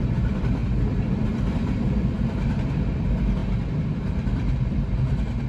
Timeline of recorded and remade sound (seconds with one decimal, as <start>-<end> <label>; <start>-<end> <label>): 0.0-3.4 remade; 3.4-3.9 recorded; 3.9-5.5 remade